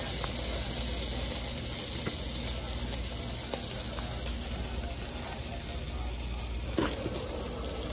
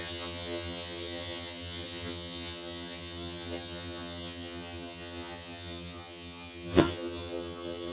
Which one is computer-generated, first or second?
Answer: second